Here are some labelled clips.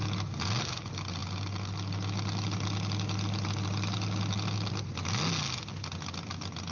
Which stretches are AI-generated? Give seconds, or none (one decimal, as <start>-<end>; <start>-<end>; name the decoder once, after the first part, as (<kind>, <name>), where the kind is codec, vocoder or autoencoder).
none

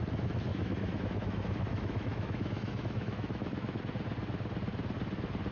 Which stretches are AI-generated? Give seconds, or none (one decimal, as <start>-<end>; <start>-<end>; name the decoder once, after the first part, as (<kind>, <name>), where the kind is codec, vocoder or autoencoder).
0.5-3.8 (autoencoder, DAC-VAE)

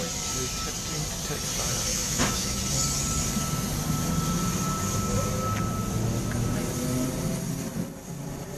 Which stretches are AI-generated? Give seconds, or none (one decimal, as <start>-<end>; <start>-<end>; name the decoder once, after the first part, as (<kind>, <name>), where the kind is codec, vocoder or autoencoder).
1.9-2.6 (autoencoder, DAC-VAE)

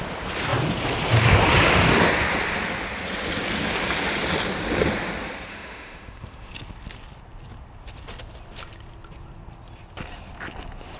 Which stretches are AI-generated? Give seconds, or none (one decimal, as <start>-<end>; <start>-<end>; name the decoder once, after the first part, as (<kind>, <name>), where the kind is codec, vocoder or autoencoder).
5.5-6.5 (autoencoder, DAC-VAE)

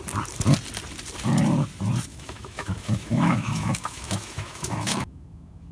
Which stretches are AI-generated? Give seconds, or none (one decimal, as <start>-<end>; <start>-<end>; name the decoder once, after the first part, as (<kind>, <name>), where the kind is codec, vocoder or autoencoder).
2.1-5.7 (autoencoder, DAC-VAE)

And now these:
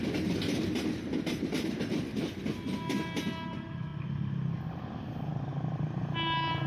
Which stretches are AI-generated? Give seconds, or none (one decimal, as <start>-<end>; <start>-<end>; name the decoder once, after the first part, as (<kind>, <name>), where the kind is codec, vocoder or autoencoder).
none

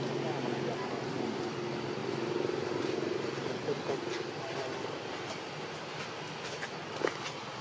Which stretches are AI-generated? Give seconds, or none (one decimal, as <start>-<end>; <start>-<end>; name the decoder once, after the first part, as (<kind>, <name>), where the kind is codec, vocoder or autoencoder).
none